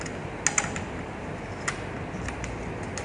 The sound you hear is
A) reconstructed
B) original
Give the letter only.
B